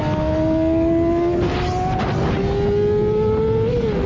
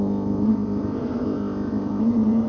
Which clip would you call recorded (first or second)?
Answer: first